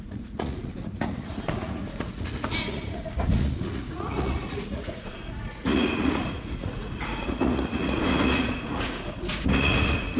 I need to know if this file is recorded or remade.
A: remade